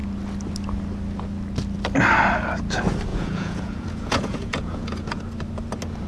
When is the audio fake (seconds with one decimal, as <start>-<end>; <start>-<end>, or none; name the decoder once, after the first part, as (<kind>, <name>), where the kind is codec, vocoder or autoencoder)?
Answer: 3.1-5.2 (vocoder, Vocos)